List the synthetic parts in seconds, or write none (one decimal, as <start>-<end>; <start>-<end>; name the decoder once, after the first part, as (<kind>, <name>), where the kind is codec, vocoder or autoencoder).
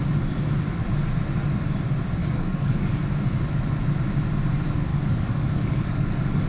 2.2-2.9 (codec, DAC); 4.9-6.5